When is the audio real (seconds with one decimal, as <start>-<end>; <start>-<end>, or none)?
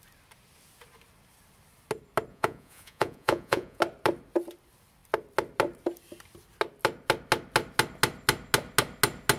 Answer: 0.0-2.3; 3.8-9.4